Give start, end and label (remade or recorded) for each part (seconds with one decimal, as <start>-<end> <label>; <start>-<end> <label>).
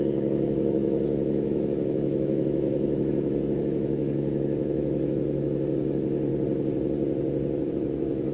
0.0-6.3 remade; 6.3-7.7 recorded; 7.7-8.3 remade